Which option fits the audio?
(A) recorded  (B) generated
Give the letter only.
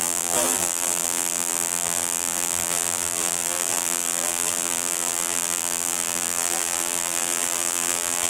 B